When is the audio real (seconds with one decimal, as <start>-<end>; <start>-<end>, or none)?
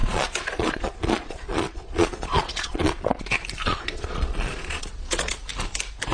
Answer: 3.2-3.6; 5.5-6.1